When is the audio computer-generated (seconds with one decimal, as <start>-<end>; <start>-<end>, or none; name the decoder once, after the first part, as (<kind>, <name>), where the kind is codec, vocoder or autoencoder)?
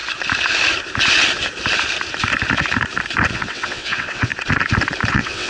3.3-4.3 (vocoder, WaveNeXt); 5.1-5.5